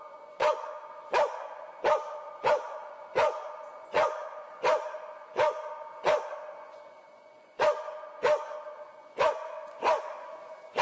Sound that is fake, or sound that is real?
fake